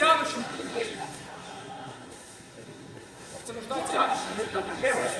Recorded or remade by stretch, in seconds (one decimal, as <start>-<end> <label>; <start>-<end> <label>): 0.0-0.4 recorded; 0.4-3.5 remade; 3.5-3.9 recorded; 3.9-5.2 remade